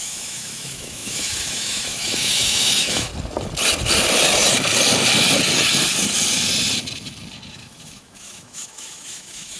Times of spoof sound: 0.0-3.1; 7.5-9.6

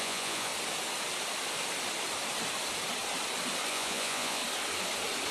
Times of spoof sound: 0.0-0.5; 3.7-4.4

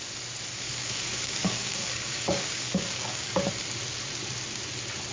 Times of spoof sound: 0.5-3.5

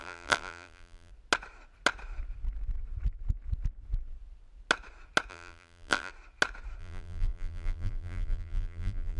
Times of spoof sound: 0.0-1.1; 5.3-6.1; 6.8-9.2

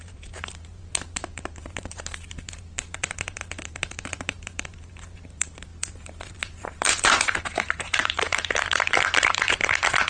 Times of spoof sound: 0.0-10.1

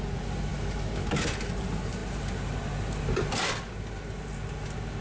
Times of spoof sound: none

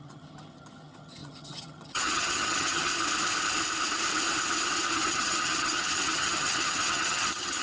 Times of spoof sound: 0.0-2.9; 4.9-7.6